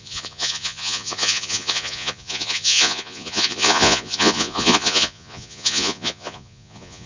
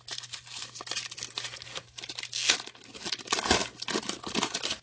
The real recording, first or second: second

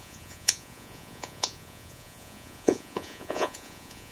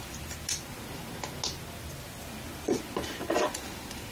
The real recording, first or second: second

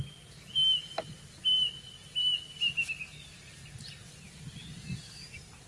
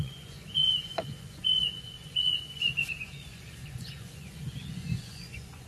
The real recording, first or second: first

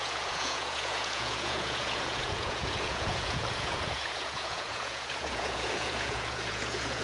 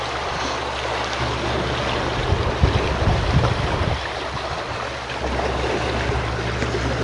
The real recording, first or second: second